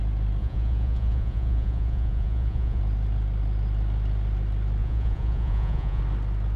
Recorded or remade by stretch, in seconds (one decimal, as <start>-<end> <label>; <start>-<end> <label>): 0.0-0.4 recorded; 0.4-2.8 remade; 2.8-4.8 recorded; 4.8-6.0 remade; 6.0-6.6 recorded